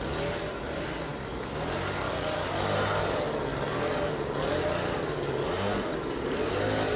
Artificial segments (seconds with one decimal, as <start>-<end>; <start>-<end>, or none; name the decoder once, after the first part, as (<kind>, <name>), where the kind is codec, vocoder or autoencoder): none